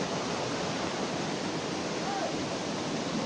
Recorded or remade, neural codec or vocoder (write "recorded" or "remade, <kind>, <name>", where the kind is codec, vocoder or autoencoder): recorded